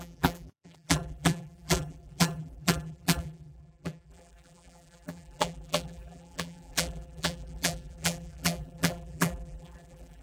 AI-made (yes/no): yes